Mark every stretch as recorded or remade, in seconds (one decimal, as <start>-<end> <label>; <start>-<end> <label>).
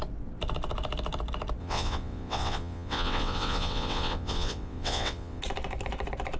0.0-1.6 recorded; 1.6-5.4 remade; 5.4-6.4 recorded